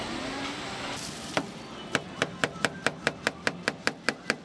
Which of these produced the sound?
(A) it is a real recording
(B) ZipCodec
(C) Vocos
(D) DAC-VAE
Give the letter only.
A